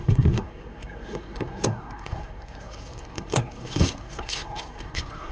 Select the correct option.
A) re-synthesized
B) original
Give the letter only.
A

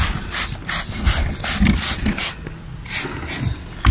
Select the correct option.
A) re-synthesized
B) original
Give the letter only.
B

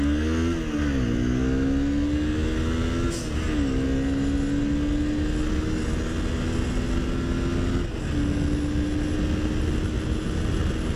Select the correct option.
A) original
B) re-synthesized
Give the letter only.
A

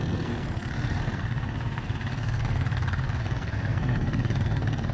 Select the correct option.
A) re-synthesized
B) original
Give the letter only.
A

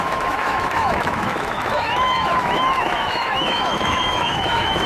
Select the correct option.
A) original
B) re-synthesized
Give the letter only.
B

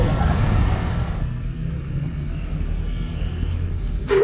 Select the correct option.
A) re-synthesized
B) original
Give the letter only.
A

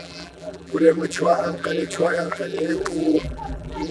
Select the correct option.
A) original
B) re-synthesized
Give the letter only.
B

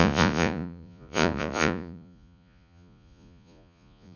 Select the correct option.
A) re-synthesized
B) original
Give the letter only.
A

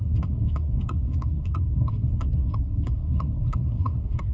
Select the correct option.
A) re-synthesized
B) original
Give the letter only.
A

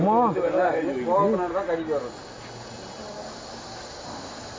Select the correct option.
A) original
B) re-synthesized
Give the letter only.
A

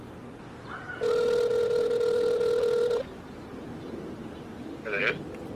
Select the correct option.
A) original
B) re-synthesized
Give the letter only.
B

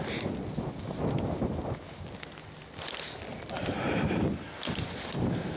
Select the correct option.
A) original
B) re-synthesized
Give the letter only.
A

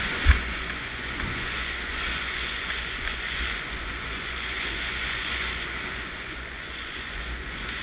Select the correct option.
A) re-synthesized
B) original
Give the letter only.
A